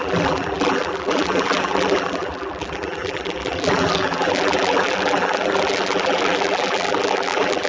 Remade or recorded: remade